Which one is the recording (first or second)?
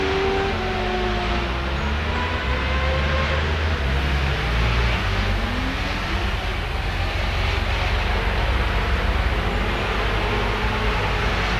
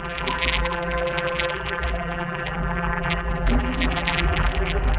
first